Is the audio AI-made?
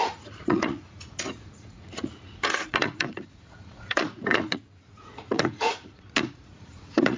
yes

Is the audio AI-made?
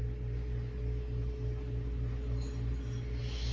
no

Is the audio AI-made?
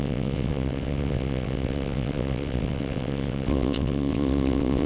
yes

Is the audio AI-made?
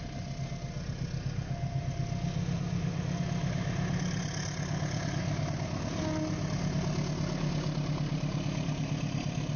no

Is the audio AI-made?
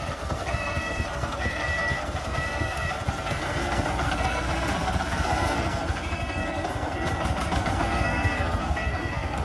yes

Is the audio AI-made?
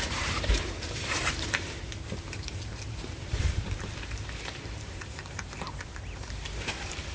yes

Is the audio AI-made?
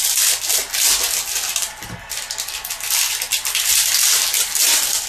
no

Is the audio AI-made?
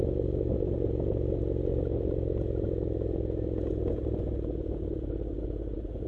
yes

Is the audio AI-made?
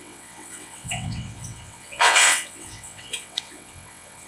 yes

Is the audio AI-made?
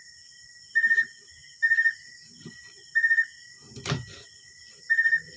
no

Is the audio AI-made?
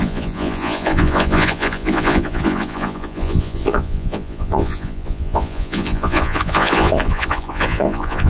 yes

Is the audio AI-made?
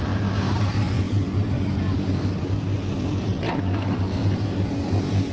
yes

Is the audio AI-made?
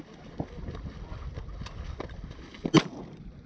no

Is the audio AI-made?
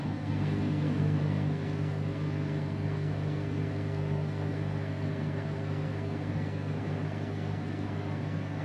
yes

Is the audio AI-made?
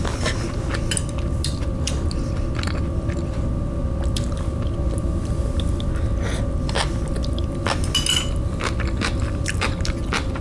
no